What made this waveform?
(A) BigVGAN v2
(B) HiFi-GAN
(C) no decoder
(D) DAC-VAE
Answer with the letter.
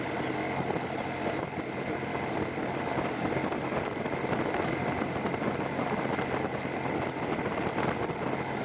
C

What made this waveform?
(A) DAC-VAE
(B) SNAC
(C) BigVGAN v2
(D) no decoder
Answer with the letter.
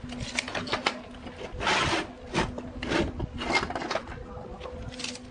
D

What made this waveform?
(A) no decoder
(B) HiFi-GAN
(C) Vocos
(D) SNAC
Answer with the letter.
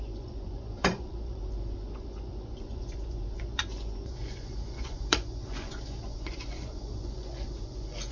C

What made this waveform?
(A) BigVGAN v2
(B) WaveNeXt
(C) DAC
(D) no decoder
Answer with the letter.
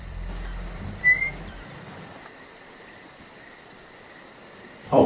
A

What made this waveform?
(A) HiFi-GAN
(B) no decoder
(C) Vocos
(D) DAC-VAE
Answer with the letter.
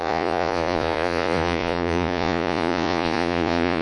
C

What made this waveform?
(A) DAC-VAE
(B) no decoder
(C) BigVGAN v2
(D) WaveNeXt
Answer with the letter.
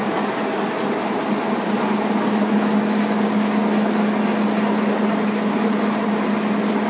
B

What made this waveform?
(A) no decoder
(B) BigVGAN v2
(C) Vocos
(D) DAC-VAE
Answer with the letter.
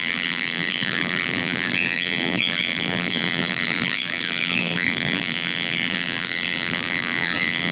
B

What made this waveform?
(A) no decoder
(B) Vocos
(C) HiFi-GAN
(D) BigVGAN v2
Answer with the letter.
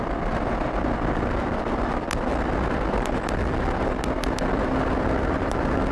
A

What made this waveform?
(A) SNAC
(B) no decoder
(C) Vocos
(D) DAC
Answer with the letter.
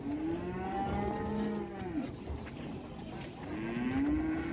B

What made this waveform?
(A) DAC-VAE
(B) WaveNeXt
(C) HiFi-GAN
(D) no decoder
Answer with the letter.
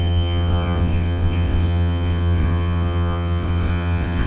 B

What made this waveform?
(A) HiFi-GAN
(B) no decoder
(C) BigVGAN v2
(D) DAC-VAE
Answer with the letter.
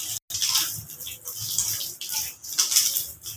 B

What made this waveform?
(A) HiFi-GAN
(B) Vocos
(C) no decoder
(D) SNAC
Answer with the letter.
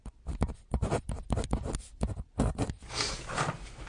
C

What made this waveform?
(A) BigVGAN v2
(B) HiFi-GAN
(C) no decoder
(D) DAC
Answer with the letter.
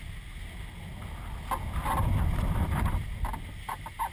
C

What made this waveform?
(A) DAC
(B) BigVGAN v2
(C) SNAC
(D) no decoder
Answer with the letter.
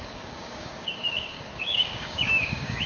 A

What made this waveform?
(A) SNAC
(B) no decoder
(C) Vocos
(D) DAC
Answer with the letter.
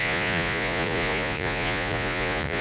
C